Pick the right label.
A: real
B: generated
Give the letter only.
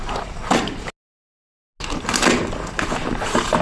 A